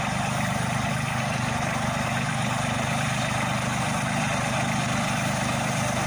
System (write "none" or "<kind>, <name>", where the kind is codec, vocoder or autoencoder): none